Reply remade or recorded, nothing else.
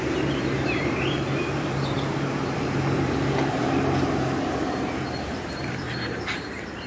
remade